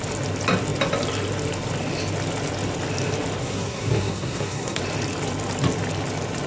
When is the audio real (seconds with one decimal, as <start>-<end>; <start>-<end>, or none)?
0.0-3.4; 4.8-6.5

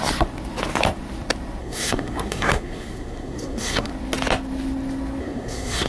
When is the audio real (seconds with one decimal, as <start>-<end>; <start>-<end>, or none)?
0.0-1.6; 3.9-5.2

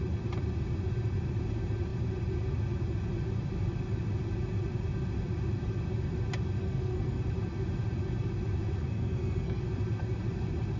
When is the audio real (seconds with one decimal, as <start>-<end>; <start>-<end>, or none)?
0.0-6.6; 7.2-8.8; 9.6-10.8

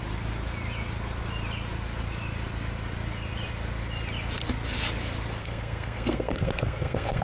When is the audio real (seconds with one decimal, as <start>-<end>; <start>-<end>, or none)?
0.0-5.4

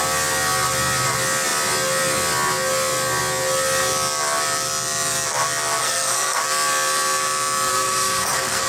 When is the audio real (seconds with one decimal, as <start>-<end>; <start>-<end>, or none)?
0.0-5.8; 6.4-7.7